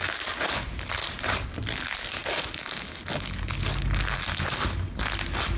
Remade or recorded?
recorded